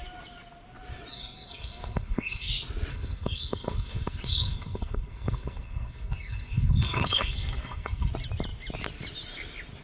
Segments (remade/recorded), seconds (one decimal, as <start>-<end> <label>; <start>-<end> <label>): 0.0-1.1 recorded; 1.1-2.5 remade; 2.5-2.9 recorded; 2.9-8.1 remade; 8.1-9.8 recorded